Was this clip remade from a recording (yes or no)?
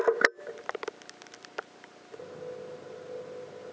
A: no